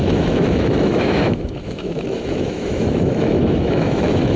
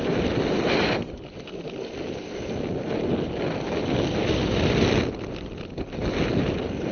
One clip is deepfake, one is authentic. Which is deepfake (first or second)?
first